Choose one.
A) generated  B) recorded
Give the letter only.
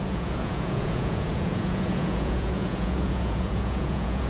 A